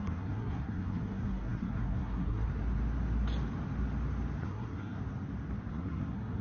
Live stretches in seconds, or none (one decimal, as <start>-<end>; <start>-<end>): 2.5-4.4; 5.0-5.7